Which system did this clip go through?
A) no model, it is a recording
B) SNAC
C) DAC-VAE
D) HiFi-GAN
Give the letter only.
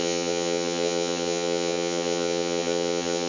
D